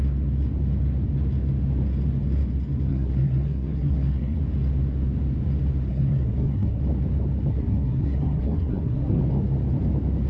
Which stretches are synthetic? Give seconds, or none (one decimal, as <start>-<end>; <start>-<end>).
2.9-4.4; 5.9-6.8; 7.5-9.2